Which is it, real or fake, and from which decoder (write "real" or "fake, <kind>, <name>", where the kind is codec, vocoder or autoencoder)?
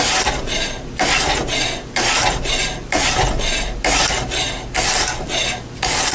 real